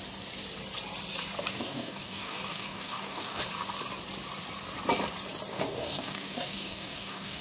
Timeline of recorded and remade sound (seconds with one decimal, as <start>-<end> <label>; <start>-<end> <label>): 0.0-1.5 recorded; 1.5-3.4 remade; 3.4-5.5 recorded; 5.5-7.4 remade